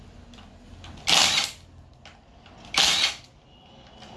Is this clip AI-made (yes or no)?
no